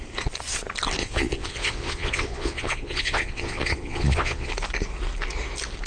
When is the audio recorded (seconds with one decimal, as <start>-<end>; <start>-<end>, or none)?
0.0-1.0; 4.5-5.9